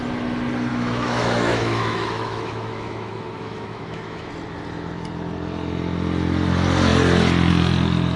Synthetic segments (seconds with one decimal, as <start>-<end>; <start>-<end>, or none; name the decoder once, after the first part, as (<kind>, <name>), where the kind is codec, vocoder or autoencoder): 0.7-4.3 (autoencoder, DAC-VAE)